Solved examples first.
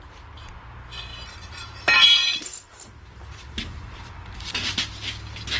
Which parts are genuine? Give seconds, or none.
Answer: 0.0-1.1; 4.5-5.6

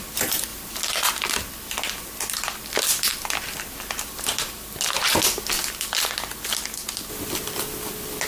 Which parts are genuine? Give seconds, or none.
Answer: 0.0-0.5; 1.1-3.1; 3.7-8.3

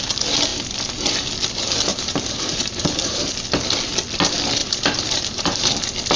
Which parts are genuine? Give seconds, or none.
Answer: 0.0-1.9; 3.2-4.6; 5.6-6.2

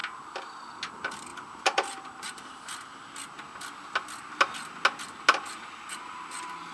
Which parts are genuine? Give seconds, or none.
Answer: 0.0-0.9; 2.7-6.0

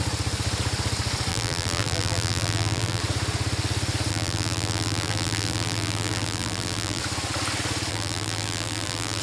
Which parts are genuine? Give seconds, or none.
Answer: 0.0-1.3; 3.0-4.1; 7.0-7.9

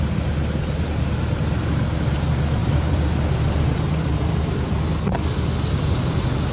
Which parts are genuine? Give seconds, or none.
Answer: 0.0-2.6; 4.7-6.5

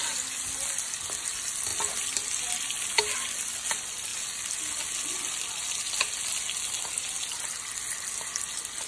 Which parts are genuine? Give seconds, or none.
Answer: 0.0-8.9

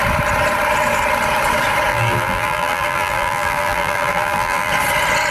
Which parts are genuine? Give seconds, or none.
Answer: 0.0-1.9; 4.7-5.3